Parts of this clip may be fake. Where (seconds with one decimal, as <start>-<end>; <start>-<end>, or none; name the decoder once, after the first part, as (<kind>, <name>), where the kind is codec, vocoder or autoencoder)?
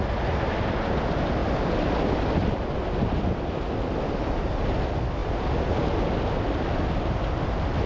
none